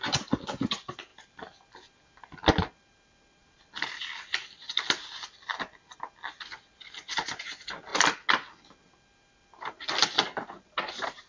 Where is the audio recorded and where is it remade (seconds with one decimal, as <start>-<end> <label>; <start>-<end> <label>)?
0.0-11.3 recorded